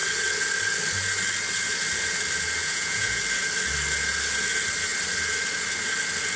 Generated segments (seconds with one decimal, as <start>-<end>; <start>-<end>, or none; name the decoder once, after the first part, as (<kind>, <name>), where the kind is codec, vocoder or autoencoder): 2.6-3.2 (vocoder, Vocos)